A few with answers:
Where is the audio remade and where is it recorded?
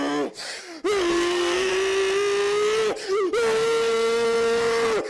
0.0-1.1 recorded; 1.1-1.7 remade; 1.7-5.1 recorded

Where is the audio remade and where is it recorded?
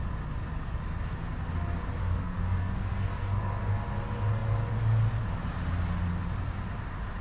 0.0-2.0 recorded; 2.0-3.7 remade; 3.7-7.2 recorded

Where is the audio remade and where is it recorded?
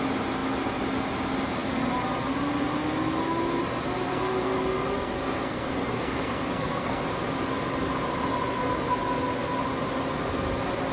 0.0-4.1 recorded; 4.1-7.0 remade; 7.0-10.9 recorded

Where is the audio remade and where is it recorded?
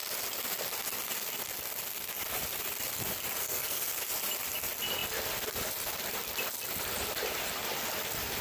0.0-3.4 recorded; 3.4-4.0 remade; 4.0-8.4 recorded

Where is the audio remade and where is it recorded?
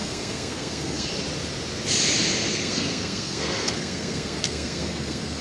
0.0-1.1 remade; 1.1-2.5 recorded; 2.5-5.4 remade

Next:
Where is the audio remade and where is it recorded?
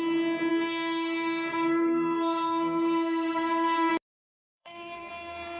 0.0-0.5 recorded; 0.5-3.9 remade; 3.9-4.3 recorded; 4.3-5.1 remade; 5.1-5.6 recorded